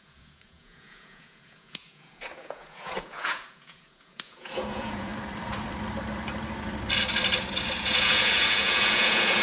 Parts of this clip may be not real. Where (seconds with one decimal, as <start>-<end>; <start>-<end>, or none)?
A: 0.0-5.1; 7.8-9.4